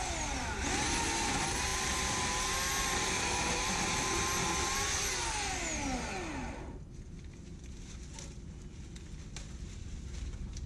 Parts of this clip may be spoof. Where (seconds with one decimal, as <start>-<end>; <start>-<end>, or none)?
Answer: none